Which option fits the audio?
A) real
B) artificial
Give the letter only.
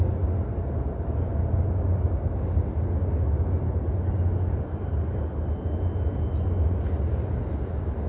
A